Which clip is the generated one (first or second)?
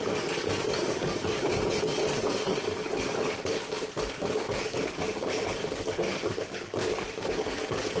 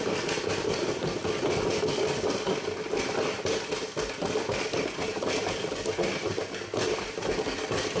first